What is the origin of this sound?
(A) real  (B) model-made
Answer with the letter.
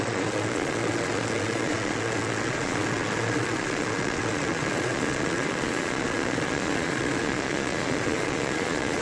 B